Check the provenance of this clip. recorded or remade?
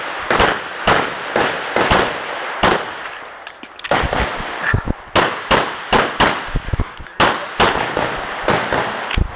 recorded